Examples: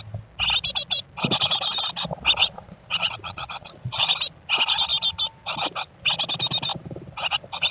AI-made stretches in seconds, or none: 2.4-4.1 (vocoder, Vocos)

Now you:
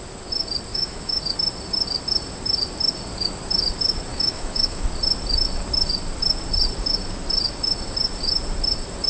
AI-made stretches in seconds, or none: 0.7-1.2 (autoencoder, DAC-VAE); 4.1-4.9

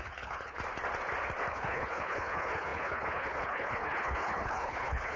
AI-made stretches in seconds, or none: 0.0-0.6 (codec, HILCodec); 1.5-5.2